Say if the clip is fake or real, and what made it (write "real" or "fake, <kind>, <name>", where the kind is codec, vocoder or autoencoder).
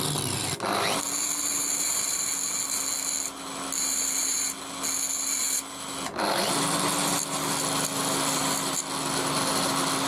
real